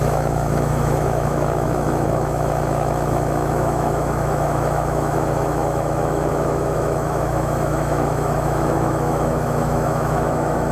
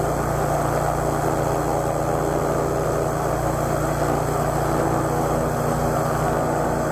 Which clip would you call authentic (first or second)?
second